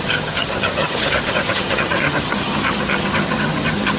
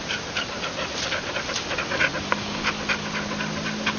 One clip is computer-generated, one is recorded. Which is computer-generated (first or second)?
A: first